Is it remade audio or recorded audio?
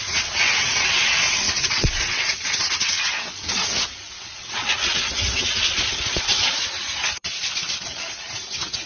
remade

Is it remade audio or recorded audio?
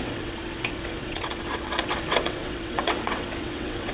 remade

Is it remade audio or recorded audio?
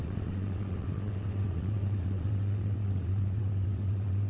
remade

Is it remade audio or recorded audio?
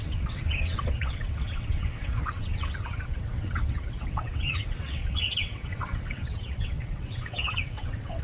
remade